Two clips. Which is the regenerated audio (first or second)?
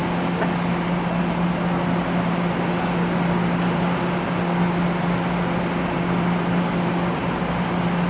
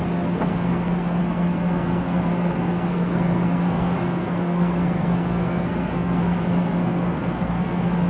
second